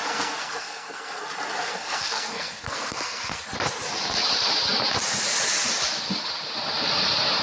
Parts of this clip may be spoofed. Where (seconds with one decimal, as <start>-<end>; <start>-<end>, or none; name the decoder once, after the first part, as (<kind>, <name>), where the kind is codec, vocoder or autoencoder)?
0.0-1.2 (codec, SNAC); 1.7-3.4